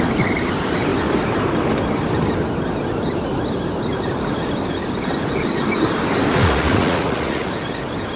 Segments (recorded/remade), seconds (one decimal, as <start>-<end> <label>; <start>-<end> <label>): 0.0-6.3 recorded; 6.3-7.5 remade; 7.5-8.2 recorded